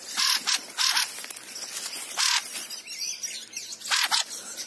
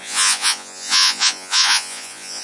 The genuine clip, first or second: first